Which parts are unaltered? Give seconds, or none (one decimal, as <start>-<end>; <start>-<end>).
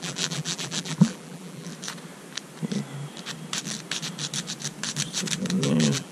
1.7-5.4